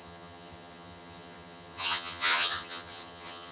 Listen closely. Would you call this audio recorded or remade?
remade